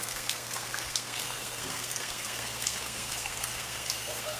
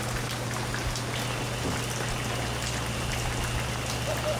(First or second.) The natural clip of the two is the second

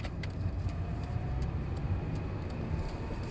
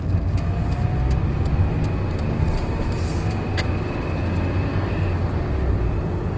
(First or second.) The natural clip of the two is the second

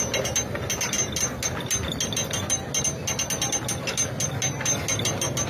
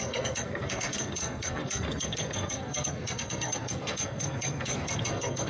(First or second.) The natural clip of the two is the first